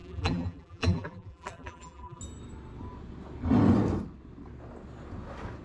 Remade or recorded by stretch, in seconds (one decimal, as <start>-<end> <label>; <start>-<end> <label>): 0.0-2.2 remade; 2.2-5.6 recorded